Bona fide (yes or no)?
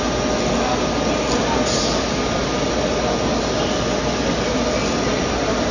yes